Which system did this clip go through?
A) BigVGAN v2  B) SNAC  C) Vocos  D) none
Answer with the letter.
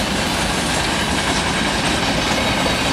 D